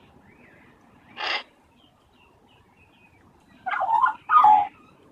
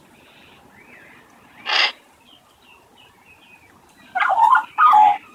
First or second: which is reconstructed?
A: first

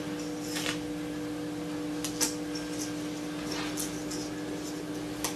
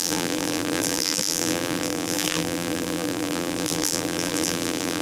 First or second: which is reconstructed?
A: second